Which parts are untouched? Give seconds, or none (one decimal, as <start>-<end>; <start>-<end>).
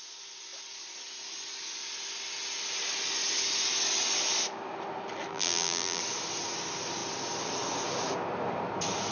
0.0-5.3; 6.0-9.1